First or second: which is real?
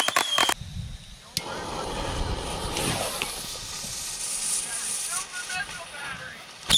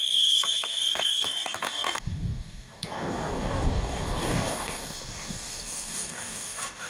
first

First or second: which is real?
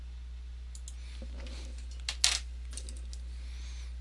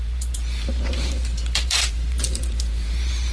first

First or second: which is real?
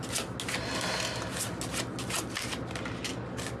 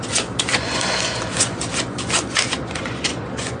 first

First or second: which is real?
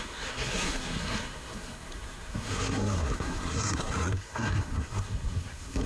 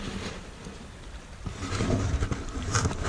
second